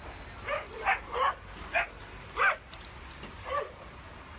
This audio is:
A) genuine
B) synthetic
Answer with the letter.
A